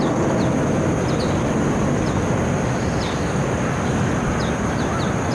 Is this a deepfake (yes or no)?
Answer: no